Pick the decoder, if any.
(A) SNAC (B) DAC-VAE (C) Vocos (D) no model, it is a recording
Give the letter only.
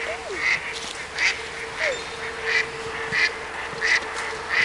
D